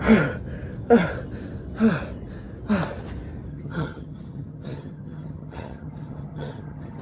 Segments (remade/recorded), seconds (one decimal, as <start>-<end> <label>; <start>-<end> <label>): 0.0-3.5 recorded; 3.5-7.0 remade